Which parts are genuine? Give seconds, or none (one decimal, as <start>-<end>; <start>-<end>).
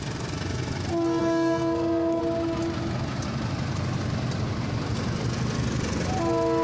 0.0-1.2; 2.2-6.6